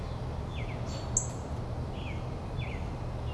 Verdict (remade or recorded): recorded